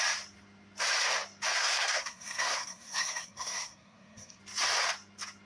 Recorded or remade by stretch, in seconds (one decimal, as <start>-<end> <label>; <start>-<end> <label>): 0.0-1.5 recorded; 1.5-4.4 remade; 4.4-5.5 recorded